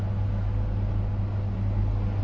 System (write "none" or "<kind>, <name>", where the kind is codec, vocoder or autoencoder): none